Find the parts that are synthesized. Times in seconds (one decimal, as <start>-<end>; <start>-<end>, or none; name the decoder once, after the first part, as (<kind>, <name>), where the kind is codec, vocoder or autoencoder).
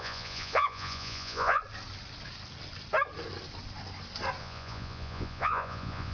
0.0-1.6 (vocoder, Vocos); 4.4-6.1